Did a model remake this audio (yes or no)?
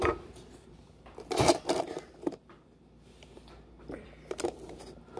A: no